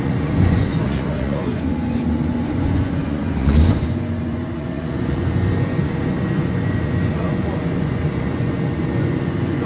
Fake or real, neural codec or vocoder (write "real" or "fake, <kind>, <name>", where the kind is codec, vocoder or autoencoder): fake, vocoder, Vocos